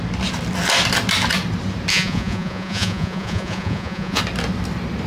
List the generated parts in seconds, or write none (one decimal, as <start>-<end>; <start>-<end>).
1.9-4.2